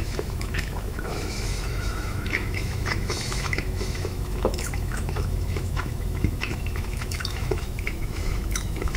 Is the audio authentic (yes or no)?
no